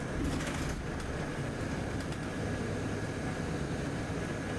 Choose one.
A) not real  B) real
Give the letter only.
B